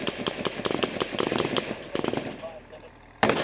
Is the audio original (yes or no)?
yes